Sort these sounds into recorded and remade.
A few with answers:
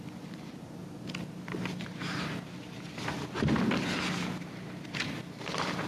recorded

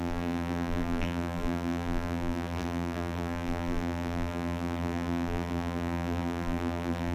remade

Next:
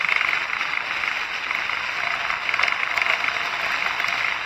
recorded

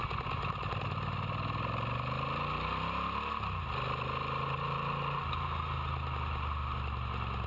recorded